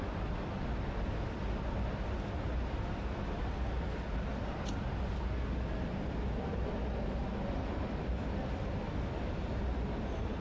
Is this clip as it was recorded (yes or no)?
yes